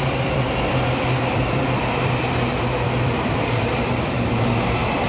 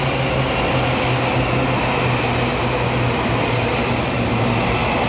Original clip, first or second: second